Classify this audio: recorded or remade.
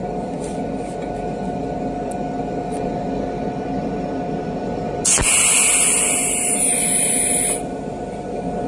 recorded